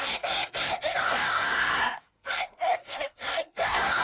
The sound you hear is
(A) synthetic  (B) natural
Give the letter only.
A